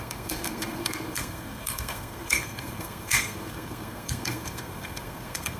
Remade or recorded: remade